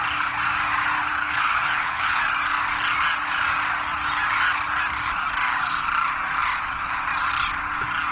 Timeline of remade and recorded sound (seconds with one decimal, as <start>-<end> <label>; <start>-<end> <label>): 0.0-1.1 recorded; 1.1-2.2 remade; 2.2-8.1 recorded